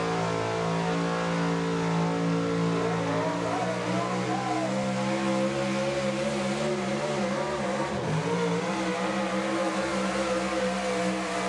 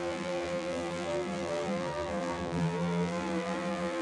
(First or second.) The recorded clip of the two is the first